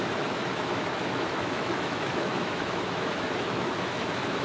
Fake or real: fake